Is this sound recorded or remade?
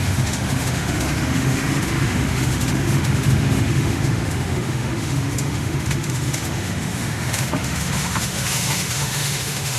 remade